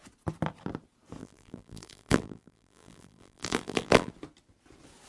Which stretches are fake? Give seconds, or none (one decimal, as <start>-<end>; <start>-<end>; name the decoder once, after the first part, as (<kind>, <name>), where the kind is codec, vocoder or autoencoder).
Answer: 1.2-4.1 (vocoder, BigVGAN v2)